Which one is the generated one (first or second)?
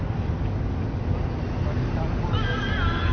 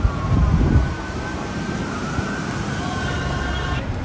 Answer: second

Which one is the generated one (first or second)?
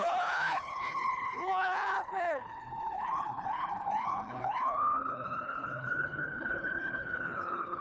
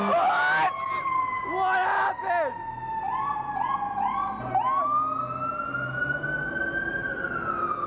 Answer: first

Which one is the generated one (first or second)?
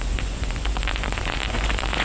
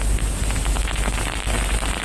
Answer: first